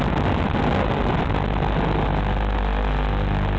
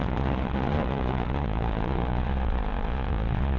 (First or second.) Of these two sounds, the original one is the first